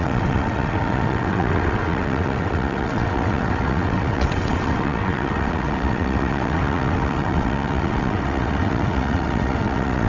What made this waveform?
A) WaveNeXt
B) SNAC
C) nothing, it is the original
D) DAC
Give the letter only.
A